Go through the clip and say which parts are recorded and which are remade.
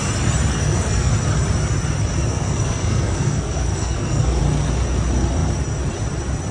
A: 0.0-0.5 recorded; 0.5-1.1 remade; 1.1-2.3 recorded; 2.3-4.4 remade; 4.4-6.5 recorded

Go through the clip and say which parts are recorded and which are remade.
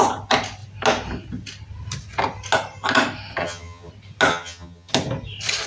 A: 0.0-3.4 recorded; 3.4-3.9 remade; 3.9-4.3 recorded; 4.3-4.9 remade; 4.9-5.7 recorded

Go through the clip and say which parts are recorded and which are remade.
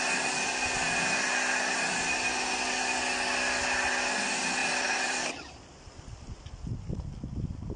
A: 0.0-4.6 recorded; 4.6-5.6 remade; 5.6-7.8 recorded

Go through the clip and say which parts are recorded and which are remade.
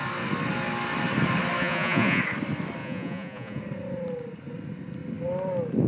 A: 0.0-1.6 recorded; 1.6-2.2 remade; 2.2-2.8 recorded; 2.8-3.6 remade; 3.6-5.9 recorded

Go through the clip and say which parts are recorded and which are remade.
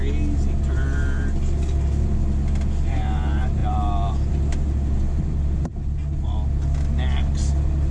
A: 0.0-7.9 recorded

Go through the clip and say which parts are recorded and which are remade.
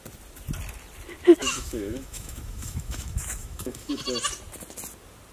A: 0.0-1.4 recorded; 1.4-4.0 remade; 4.0-5.3 recorded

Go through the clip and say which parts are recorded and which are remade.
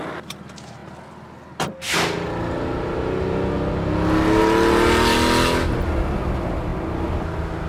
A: 0.0-7.7 recorded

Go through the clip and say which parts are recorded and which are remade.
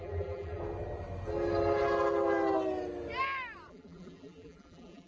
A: 0.0-0.6 remade; 0.6-3.7 recorded; 3.7-5.1 remade